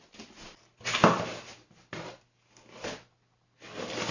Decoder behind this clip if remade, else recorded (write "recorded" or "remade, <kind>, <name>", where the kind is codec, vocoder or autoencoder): recorded